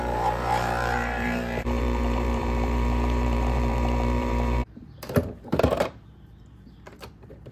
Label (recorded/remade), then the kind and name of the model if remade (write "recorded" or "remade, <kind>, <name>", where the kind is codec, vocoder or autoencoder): remade, vocoder, BigVGAN v2